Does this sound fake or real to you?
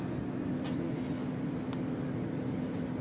real